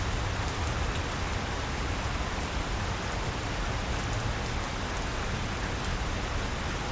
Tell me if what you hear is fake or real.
real